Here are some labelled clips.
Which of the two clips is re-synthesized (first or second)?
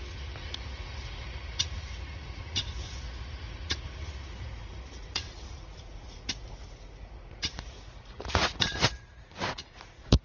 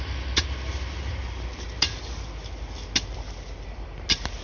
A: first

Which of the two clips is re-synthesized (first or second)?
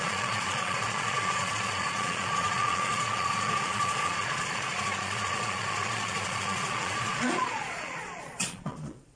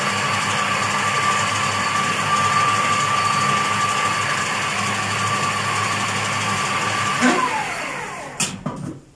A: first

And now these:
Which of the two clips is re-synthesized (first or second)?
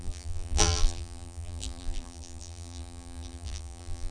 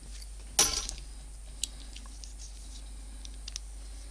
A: first